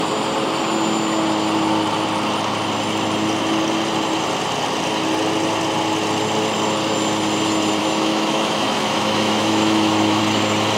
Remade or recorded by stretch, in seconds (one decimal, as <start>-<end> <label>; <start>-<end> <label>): 0.0-7.8 recorded; 7.8-10.2 remade; 10.2-10.8 recorded